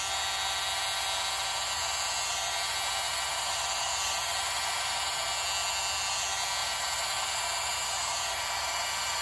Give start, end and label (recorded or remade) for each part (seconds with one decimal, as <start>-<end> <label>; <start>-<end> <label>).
0.0-3.1 recorded; 3.1-5.3 remade; 5.3-6.6 recorded; 6.6-9.2 remade